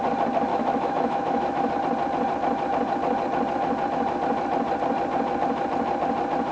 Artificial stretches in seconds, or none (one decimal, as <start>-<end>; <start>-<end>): 0.5-1.7